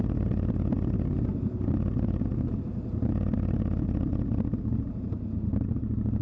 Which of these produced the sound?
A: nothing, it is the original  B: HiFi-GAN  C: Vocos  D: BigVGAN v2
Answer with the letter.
A